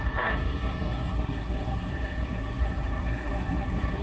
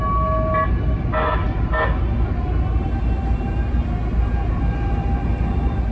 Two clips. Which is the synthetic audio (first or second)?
first